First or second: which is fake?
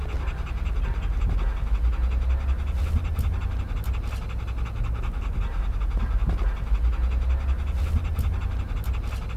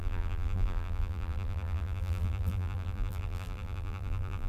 second